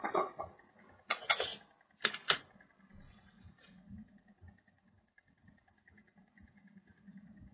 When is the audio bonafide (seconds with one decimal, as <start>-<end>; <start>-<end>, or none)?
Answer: 1.5-3.1